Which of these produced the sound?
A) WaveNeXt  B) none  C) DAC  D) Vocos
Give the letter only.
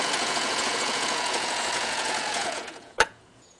D